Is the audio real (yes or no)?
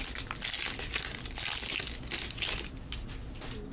yes